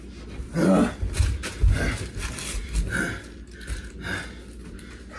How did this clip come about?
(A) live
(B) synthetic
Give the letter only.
A